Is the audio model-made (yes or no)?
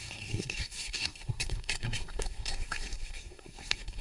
yes